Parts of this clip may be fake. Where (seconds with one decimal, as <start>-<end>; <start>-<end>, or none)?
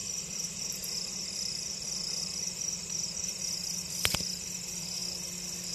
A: 0.0-3.4